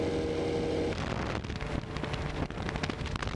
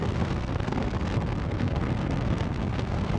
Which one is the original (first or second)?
first